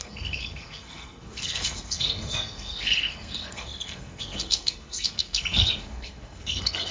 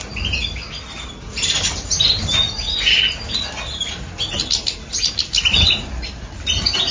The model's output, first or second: first